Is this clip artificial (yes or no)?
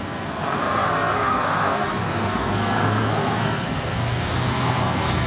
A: yes